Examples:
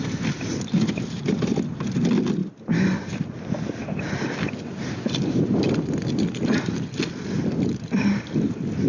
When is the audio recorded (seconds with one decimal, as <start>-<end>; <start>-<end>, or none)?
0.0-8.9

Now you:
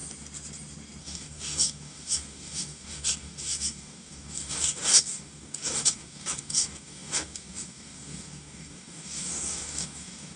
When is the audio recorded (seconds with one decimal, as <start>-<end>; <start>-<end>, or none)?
0.0-1.0

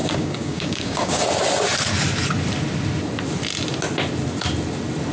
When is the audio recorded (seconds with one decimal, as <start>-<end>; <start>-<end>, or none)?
1.2-5.1

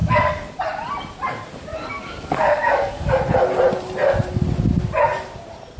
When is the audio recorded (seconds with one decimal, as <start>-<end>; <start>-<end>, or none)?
0.6-1.9; 3.1-5.8

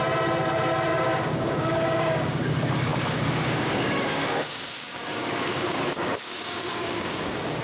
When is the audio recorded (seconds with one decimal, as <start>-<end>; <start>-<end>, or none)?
0.0-0.9; 2.5-2.9

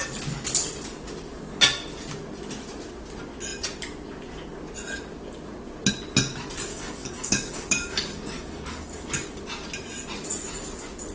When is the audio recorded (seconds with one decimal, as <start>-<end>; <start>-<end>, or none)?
0.0-6.7; 9.4-11.1